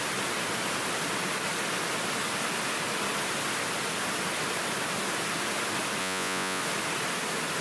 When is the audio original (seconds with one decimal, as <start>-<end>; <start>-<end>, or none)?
0.0-6.0; 6.6-7.6